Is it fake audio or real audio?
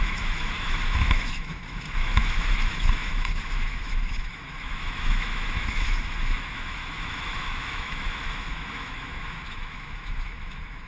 fake